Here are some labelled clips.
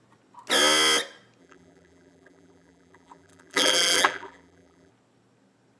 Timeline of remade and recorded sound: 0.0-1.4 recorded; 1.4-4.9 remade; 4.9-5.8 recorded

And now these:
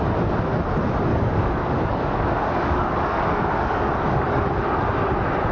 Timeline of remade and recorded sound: 0.0-1.1 recorded; 1.1-4.4 remade; 4.4-5.5 recorded

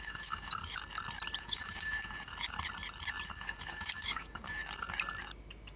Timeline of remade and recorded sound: 0.0-0.6 remade; 0.6-1.4 recorded; 1.4-2.3 remade; 2.3-3.3 recorded; 3.3-4.6 remade; 4.6-5.8 recorded

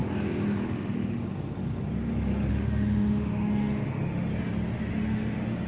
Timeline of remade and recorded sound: 0.0-2.5 recorded; 2.5-4.3 remade; 4.3-4.9 recorded; 4.9-5.7 remade

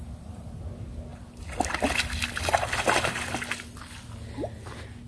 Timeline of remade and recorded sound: 0.0-5.1 recorded